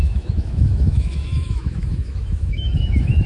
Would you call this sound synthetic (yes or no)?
yes